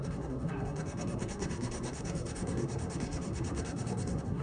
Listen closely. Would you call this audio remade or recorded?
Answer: remade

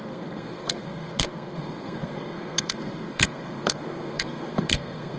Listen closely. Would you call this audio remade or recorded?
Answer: remade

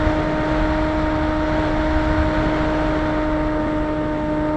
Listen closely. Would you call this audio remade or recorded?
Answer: recorded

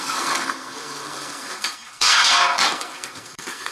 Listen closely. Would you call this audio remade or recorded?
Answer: remade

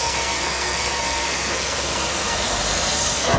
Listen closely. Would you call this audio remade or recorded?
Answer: remade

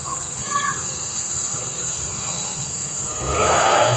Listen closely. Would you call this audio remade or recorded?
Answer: remade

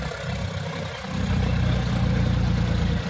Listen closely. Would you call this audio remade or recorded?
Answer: recorded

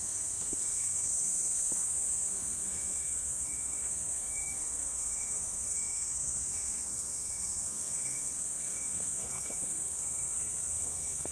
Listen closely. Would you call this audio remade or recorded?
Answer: remade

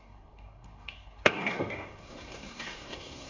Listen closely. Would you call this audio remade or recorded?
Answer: remade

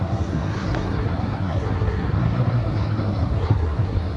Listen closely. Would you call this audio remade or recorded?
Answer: remade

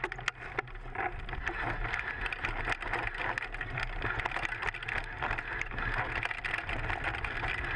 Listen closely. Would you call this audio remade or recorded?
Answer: recorded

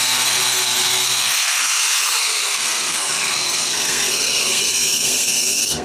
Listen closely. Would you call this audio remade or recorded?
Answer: remade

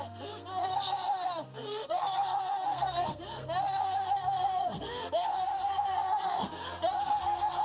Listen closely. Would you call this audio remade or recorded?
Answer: remade